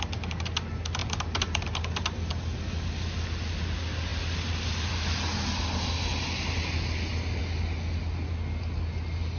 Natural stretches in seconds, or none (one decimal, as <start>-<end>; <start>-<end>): 0.0-9.4